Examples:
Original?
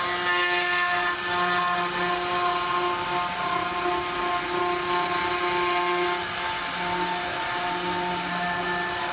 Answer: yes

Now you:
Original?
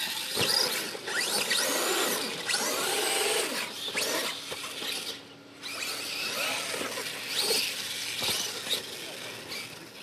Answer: yes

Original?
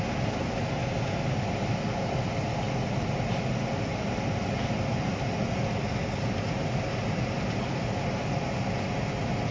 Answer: yes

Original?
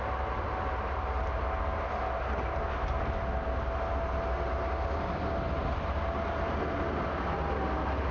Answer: yes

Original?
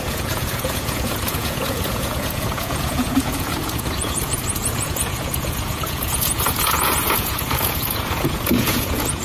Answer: no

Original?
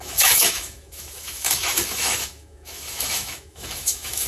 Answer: no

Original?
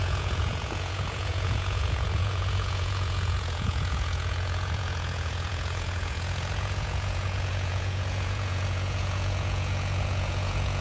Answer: no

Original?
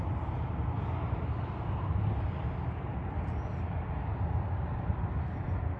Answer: yes